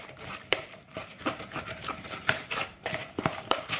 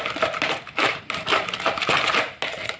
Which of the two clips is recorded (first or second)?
second